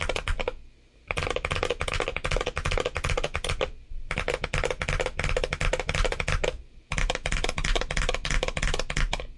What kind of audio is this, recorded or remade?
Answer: recorded